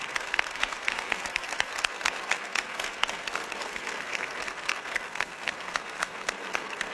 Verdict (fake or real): fake